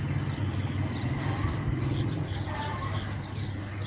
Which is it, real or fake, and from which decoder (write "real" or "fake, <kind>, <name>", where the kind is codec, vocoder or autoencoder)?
real